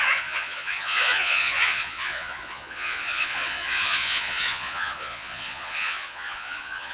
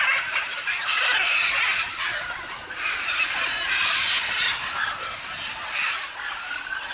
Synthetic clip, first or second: first